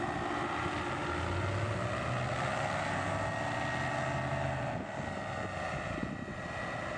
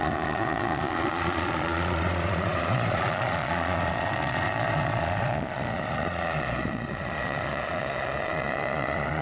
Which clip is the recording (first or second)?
first